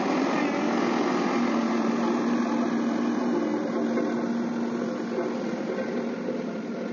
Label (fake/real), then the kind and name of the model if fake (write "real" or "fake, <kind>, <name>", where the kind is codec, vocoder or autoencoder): real